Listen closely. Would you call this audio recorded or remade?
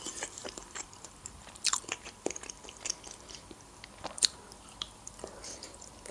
remade